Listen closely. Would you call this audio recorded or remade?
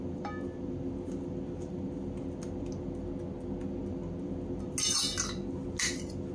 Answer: recorded